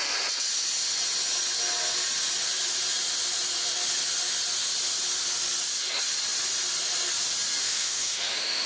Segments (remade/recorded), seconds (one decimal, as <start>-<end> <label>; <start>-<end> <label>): 0.0-7.6 recorded; 7.6-8.7 remade